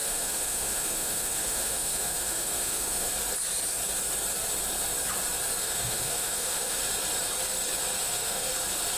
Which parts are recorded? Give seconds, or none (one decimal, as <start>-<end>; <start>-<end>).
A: 3.1-5.6; 6.8-8.0; 8.5-9.0